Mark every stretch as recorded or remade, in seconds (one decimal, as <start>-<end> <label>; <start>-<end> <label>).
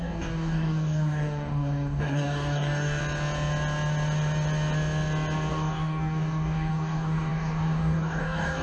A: 0.0-3.0 remade; 3.0-5.5 recorded; 5.5-8.6 remade